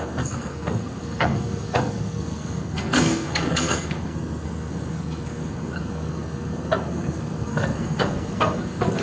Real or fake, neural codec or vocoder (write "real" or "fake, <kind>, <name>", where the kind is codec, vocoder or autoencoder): fake, codec, SNAC